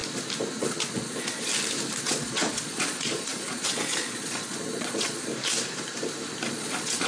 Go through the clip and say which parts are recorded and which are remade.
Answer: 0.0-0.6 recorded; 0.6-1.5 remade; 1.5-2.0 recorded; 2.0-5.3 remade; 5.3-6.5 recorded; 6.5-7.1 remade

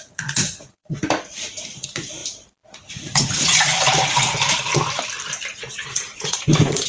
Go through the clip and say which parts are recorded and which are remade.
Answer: 0.0-1.0 remade; 1.0-1.7 recorded; 1.7-2.2 remade; 2.2-2.9 recorded; 2.9-3.7 remade; 3.7-5.5 recorded; 5.5-6.9 remade

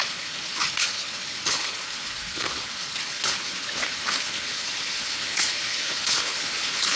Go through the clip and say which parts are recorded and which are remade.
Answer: 0.0-7.0 remade

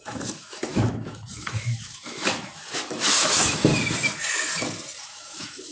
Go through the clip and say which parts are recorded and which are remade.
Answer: 0.0-3.7 remade; 3.7-5.0 recorded; 5.0-5.7 remade

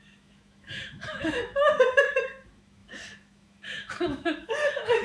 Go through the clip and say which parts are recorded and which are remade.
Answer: 0.0-5.0 remade

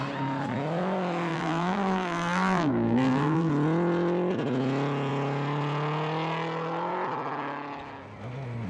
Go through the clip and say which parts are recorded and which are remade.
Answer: 0.0-1.3 recorded; 1.3-3.5 remade; 3.5-8.7 recorded